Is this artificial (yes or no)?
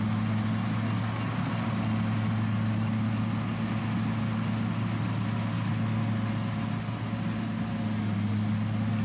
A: no